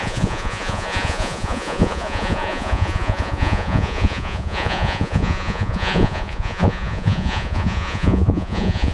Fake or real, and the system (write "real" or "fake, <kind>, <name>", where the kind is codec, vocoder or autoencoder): fake, vocoder, Vocos